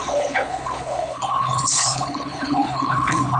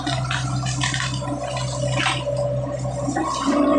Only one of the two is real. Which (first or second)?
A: second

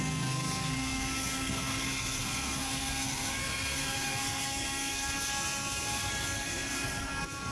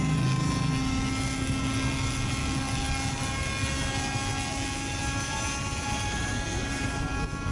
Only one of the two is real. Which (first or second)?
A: second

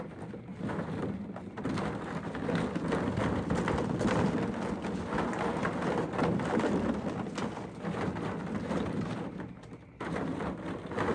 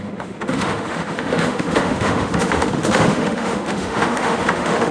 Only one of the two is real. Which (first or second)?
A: first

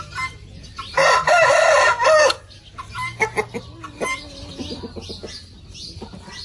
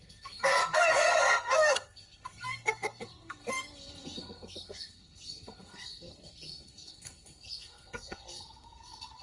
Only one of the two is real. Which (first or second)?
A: first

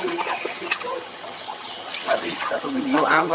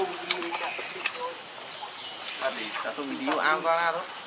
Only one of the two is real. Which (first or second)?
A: second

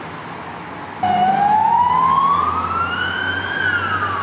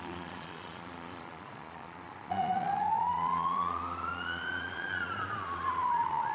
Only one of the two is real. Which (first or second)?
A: first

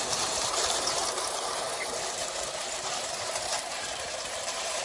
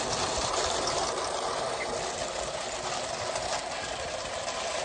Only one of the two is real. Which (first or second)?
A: second